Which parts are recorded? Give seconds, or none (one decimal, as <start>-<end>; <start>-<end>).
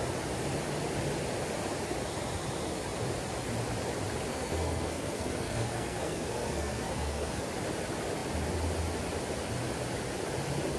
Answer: 0.0-4.3; 7.5-10.8